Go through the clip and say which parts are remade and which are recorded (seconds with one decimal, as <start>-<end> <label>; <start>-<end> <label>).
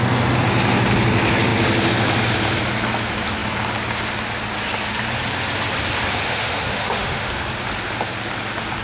0.0-6.2 recorded; 6.2-7.3 remade; 7.3-8.8 recorded